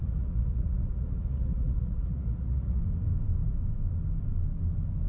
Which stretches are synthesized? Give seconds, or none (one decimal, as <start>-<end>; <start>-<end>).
0.0-2.8